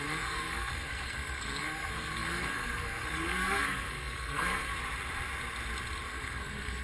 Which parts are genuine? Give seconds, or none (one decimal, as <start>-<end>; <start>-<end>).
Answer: 4.7-6.1